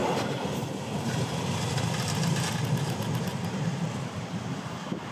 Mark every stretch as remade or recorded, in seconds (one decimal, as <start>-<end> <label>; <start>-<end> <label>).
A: 0.0-1.4 remade; 1.4-3.3 recorded; 3.3-4.2 remade; 4.2-5.1 recorded